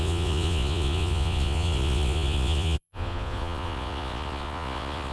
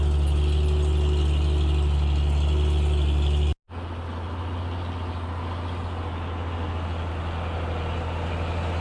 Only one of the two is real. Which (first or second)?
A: second